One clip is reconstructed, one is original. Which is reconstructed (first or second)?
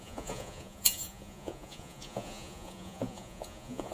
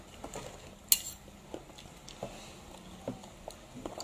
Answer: first